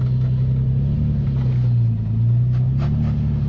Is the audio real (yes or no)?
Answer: yes